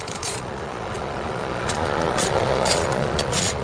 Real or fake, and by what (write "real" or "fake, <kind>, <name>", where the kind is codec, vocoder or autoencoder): fake, vocoder, Vocos